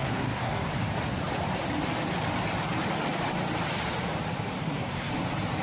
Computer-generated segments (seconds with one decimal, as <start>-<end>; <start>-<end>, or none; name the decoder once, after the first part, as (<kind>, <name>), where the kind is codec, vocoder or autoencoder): 0.0-0.7 (codec, SNAC); 4.6-5.1